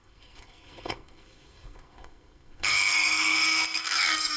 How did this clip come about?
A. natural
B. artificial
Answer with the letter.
B